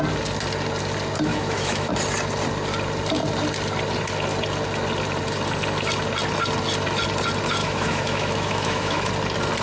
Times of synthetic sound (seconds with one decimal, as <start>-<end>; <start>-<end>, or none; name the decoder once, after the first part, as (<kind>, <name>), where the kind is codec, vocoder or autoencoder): 1.3-1.9 (autoencoder, DAC-VAE); 7.6-9.1